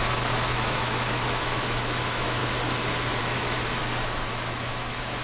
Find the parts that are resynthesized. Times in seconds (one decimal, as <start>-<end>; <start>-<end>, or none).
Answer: 0.0-2.4; 3.2-3.8; 4.3-5.2